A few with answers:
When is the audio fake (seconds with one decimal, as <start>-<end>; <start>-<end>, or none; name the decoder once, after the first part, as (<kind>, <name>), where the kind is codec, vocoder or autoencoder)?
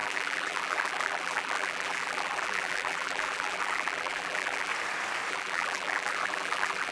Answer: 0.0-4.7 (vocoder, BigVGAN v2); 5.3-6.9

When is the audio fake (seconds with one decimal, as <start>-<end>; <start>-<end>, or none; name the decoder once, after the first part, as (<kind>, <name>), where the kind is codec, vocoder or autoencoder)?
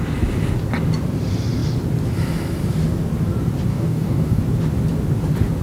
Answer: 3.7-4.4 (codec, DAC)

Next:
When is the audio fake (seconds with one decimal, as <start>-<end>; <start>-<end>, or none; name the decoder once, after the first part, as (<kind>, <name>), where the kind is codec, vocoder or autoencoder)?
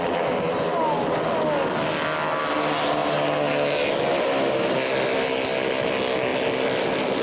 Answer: none